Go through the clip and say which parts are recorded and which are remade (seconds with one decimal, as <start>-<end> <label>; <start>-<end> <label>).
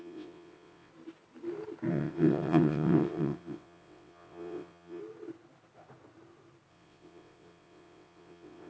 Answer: 0.0-0.9 remade; 0.9-1.9 recorded; 1.9-5.0 remade; 5.0-6.7 recorded; 6.7-8.7 remade